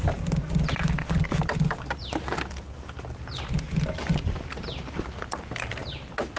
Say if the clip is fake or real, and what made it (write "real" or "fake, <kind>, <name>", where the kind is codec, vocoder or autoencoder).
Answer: real